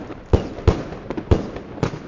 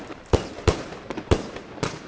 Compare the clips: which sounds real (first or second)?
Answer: first